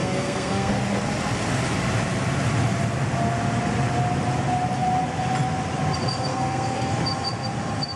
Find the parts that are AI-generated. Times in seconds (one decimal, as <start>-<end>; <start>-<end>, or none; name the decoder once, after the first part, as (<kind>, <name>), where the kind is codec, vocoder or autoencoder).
0.0-0.7 (codec, SNAC); 6.3-6.9